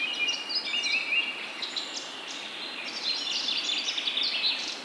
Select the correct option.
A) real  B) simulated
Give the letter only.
A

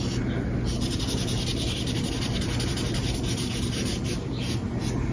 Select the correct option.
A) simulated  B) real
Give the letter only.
B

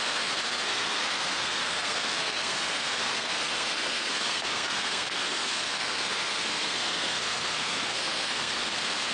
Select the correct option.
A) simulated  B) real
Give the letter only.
A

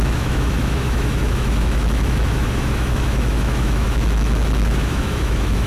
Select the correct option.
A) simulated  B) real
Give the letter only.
A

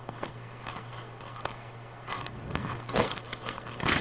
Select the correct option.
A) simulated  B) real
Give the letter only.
A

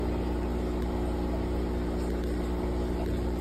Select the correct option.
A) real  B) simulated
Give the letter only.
A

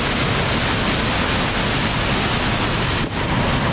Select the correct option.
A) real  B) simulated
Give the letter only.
A